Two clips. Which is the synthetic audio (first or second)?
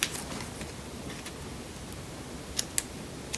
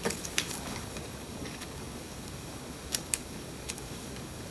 second